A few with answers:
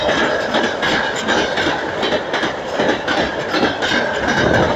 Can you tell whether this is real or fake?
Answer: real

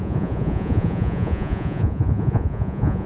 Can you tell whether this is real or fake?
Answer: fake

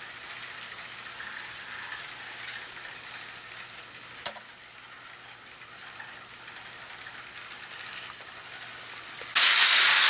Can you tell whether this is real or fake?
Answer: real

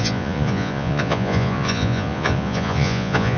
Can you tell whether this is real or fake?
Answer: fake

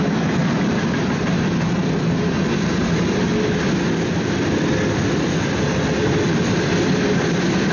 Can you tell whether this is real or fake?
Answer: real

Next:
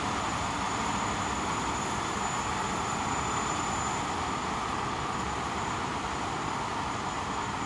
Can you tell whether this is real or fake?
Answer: real